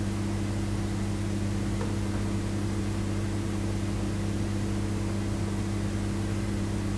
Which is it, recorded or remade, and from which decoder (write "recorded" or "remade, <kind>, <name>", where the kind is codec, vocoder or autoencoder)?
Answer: recorded